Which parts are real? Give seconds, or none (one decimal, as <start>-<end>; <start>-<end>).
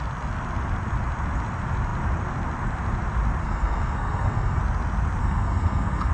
0.0-3.4; 4.6-5.2